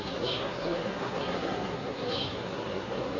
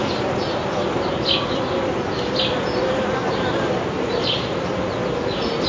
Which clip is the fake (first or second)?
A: first